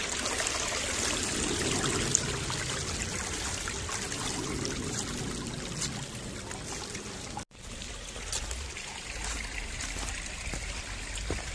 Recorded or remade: recorded